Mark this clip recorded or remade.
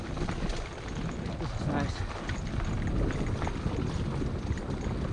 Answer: recorded